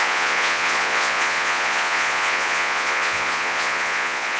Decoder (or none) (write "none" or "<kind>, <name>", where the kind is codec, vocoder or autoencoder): vocoder, Vocos